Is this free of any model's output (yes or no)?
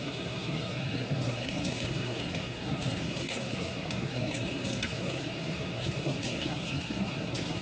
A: no